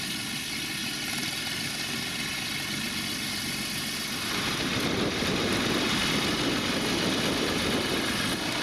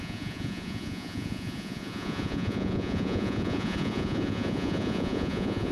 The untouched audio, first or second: first